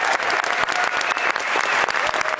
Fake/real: real